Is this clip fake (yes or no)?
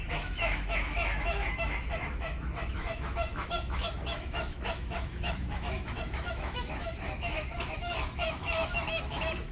yes